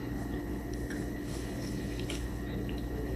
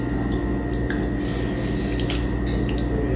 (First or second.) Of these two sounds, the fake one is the first